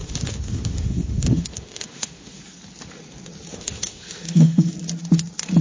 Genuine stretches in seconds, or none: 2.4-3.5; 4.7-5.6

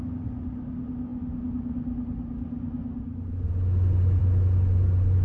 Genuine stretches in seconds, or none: 0.0-5.2

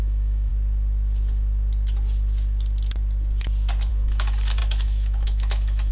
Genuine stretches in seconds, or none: 0.5-3.9

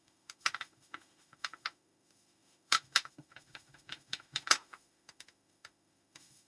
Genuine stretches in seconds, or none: none